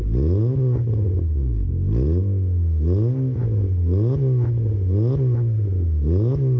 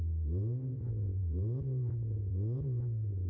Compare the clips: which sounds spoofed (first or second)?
second